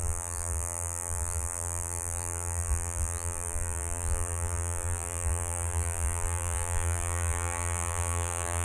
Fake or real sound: fake